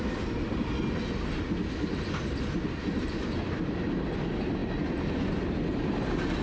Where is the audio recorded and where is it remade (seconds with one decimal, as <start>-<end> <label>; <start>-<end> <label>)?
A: 0.0-6.4 recorded